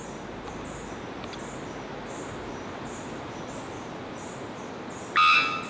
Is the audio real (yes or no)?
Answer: yes